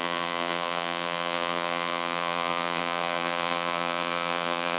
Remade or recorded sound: remade